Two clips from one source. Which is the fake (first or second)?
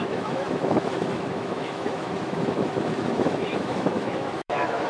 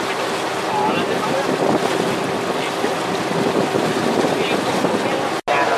first